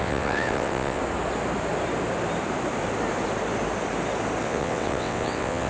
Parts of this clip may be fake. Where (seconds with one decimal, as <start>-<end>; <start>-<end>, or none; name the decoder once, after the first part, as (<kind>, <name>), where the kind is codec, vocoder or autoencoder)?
0.0-1.0 (vocoder, WaveNeXt); 4.4-5.7